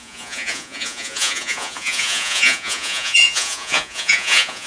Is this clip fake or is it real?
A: fake